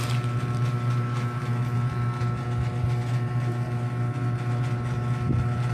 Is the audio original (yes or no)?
yes